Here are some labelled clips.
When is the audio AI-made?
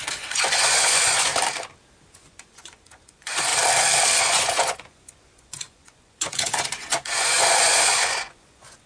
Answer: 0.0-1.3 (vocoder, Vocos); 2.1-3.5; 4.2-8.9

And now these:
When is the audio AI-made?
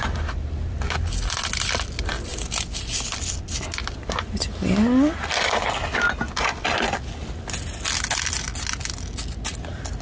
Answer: none